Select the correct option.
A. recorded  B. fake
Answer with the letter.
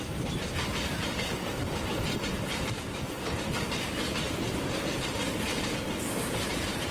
B